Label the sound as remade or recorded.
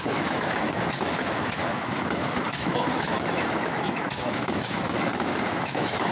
remade